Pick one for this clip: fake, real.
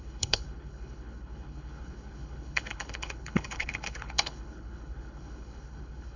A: fake